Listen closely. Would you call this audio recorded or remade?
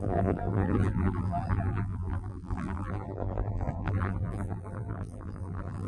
remade